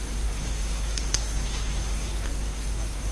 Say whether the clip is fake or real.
fake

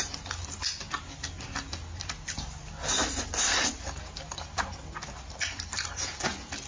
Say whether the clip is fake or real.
real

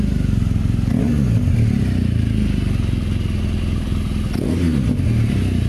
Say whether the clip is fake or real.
real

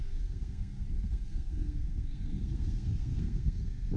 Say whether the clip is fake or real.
fake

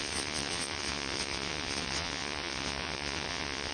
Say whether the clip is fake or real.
fake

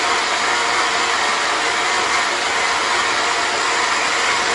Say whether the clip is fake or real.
real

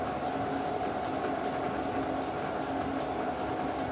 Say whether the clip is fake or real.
real